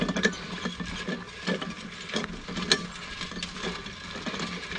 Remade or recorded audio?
recorded